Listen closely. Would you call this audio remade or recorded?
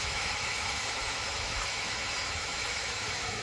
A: remade